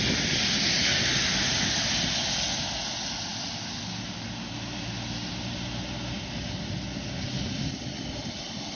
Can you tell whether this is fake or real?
real